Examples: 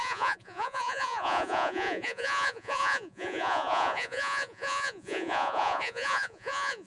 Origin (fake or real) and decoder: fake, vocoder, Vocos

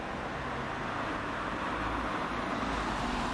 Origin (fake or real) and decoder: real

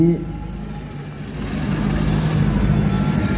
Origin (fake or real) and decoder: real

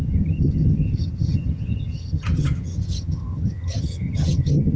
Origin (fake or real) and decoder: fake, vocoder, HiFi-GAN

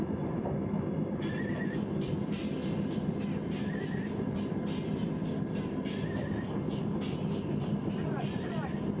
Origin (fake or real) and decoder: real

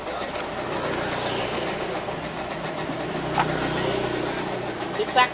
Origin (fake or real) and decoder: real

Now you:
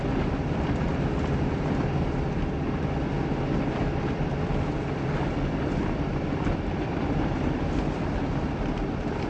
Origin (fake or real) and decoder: fake, vocoder, BigVGAN v2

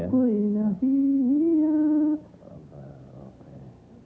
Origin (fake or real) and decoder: real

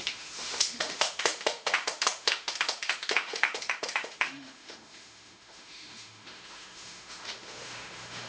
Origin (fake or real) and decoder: fake, autoencoder, DAC-VAE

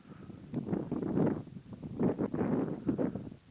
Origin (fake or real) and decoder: real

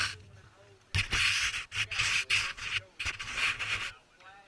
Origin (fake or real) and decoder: real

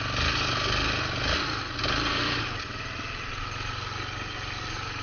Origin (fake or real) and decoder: real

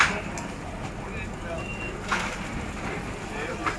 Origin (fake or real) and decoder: real